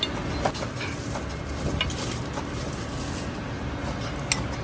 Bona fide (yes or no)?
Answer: yes